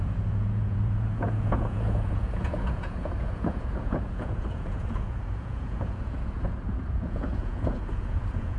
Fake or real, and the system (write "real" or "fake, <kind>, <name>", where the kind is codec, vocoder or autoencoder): fake, vocoder, Vocos